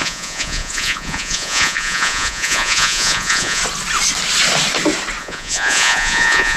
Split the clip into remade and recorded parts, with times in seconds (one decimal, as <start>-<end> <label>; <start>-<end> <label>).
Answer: 0.0-3.6 remade; 3.6-5.2 recorded; 5.2-6.6 remade